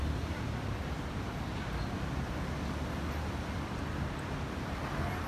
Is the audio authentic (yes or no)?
yes